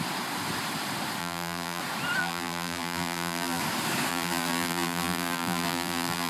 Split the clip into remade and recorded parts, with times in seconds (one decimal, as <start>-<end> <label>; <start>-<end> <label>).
0.0-1.2 recorded; 1.2-1.8 remade; 1.8-2.2 recorded; 2.2-3.6 remade; 3.6-4.1 recorded; 4.1-6.3 remade